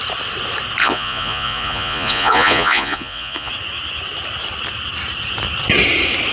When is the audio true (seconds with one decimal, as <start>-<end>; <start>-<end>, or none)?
0.0-0.8; 3.5-6.3